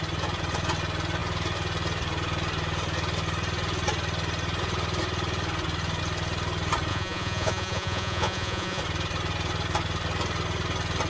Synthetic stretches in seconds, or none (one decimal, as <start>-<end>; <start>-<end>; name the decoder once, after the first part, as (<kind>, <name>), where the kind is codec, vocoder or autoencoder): 6.9-8.8 (vocoder, Vocos)